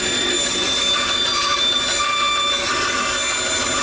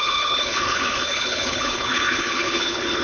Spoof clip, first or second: second